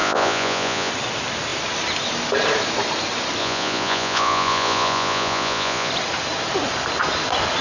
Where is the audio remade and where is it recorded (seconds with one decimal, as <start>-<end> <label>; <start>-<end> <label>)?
0.0-0.9 remade; 0.9-3.4 recorded; 3.4-5.9 remade; 5.9-7.6 recorded